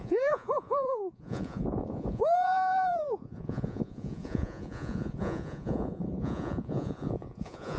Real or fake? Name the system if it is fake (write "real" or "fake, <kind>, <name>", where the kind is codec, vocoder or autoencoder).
fake, vocoder, Vocos